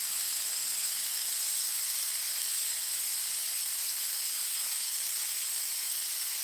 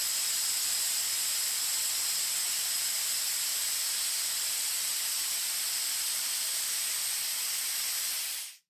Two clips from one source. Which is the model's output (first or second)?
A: first